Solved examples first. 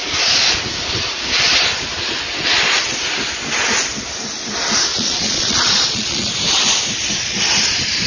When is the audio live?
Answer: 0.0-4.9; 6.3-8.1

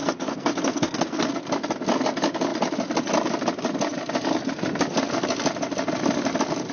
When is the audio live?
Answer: 1.3-6.7

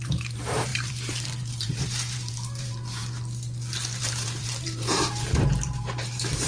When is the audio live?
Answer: 3.0-4.0

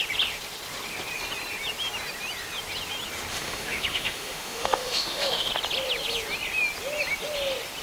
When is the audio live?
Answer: 0.0-3.3; 5.5-7.8